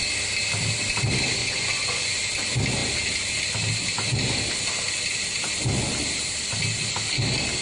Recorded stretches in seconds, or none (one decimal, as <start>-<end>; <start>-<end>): 0.0-1.4; 2.2-7.6